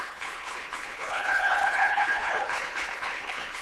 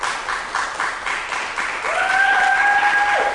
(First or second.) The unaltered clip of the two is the second